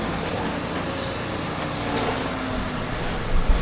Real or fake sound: real